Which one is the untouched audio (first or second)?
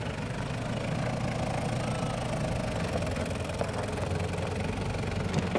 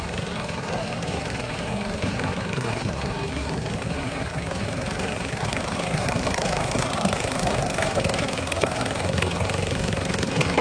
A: first